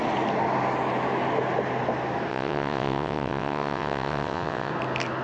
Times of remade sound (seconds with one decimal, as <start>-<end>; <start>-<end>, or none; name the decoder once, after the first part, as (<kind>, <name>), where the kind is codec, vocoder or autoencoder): 2.3-4.7 (vocoder, WaveNeXt)